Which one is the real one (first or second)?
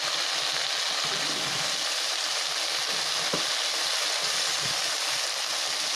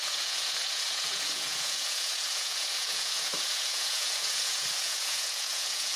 first